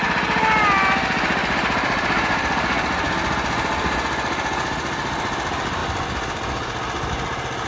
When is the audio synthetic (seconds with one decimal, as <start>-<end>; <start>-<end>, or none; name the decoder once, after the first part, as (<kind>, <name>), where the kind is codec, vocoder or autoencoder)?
none